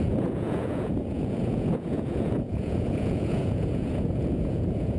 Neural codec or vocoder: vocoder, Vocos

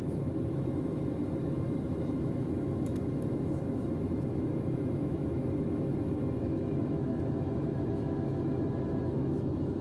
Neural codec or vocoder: autoencoder, DAC-VAE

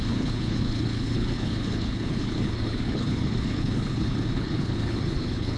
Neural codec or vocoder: codec, HILCodec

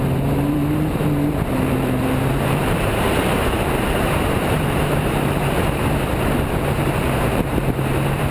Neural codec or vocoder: vocoder, BigVGAN v2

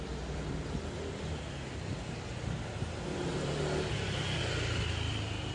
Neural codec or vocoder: none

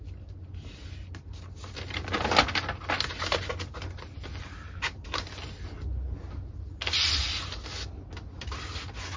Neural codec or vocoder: none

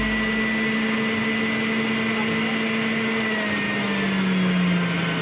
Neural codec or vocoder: none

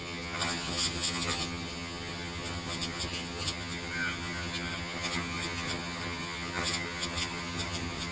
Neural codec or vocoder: vocoder, HiFi-GAN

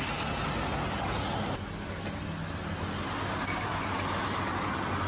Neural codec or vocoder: none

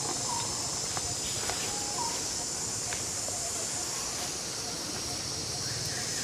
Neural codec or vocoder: none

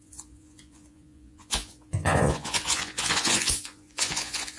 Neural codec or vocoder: vocoder, Vocos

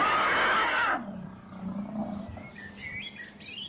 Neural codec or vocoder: none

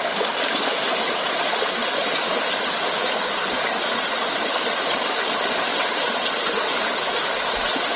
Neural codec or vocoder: none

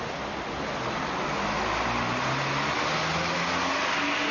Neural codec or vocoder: none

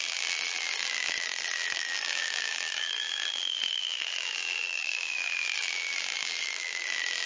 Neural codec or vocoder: vocoder, BigVGAN v2